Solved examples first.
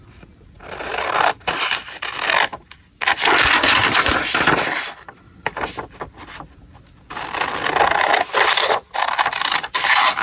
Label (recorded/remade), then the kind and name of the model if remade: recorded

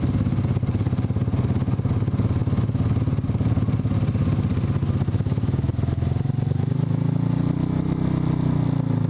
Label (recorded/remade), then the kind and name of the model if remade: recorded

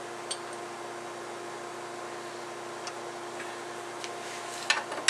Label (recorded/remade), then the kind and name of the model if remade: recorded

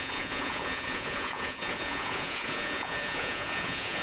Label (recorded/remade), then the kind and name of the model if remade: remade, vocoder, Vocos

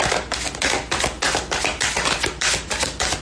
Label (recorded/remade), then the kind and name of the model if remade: recorded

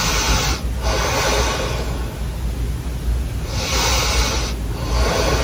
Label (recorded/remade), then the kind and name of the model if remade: recorded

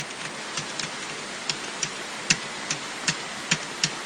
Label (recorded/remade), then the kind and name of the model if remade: recorded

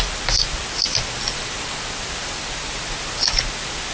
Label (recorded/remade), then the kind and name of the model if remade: recorded